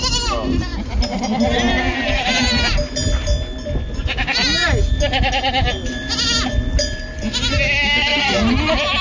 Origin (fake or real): real